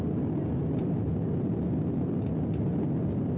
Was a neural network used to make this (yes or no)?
no